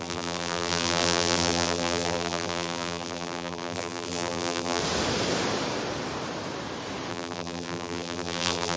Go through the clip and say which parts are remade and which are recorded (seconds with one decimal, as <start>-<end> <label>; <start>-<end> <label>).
0.0-4.8 remade; 4.8-7.1 recorded; 7.1-8.8 remade